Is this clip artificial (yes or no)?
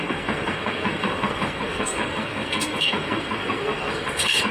yes